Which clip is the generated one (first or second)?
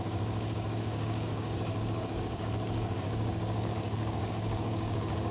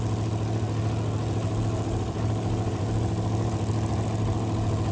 first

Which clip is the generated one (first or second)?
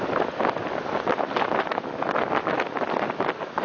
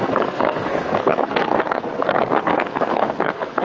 second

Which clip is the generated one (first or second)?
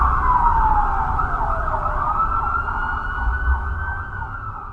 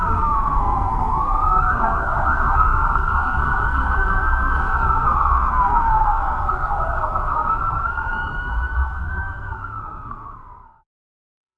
second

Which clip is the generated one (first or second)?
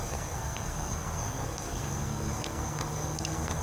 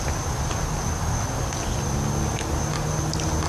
first